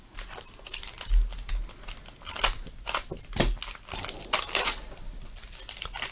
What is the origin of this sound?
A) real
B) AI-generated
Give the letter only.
A